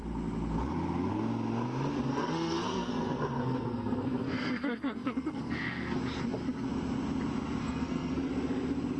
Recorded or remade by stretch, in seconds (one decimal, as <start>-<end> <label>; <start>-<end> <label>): 0.0-2.1 recorded; 2.1-6.0 remade; 6.0-7.6 recorded; 7.6-8.3 remade; 8.3-9.0 recorded